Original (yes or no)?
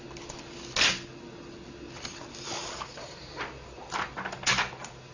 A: yes